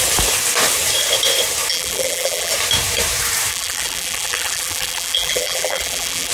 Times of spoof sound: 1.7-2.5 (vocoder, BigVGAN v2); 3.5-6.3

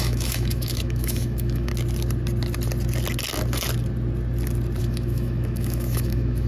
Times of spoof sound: 0.0-1.7 (autoencoder, DAC-VAE); 4.8-6.5